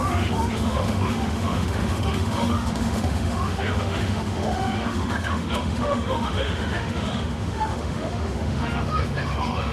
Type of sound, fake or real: fake